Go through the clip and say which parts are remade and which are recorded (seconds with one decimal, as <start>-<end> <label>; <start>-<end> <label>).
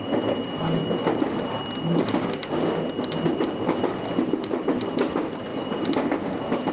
0.0-6.7 recorded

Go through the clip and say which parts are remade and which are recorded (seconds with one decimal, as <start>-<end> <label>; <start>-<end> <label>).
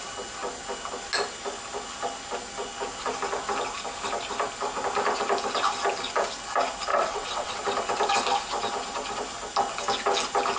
0.0-6.9 recorded; 6.9-7.6 remade; 7.6-10.6 recorded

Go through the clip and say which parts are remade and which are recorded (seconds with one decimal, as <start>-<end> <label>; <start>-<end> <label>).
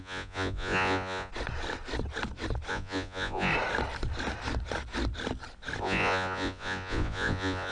0.0-1.3 remade; 1.3-2.7 recorded; 2.7-3.5 remade; 3.5-5.8 recorded; 5.8-7.7 remade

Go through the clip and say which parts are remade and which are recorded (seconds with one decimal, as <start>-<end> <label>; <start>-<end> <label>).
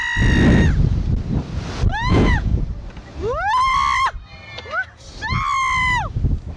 0.0-2.1 recorded; 2.1-2.5 remade; 2.5-6.6 recorded